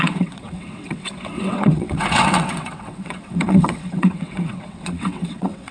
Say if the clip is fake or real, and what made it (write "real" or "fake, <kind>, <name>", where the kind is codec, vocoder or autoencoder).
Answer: fake, vocoder, WaveNeXt